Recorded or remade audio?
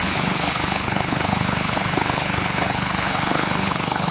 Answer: remade